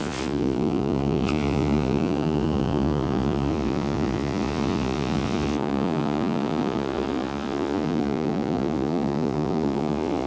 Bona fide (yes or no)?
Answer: no